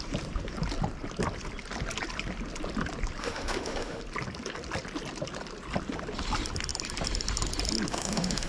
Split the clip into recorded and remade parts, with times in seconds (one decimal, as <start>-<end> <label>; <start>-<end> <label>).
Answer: 0.0-3.2 recorded; 3.2-4.0 remade; 4.0-7.9 recorded; 7.9-8.5 remade